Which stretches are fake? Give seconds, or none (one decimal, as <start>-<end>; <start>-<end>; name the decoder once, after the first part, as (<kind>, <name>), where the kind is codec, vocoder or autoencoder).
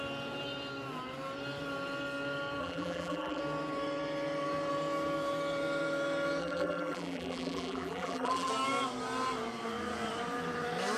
2.6-3.4 (vocoder, BigVGAN v2); 6.4-8.5